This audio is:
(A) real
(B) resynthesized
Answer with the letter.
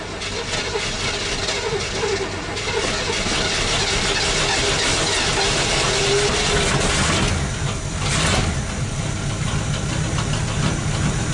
A